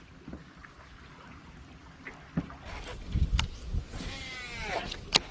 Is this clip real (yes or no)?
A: yes